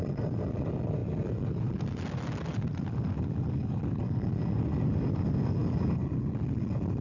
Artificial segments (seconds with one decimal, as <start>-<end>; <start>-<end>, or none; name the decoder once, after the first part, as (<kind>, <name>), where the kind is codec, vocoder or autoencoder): none